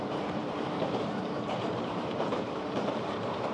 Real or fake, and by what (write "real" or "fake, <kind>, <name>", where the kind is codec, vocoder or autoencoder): fake, vocoder, BigVGAN v2